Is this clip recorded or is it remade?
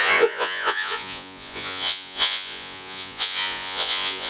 remade